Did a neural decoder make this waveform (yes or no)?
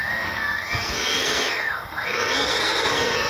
yes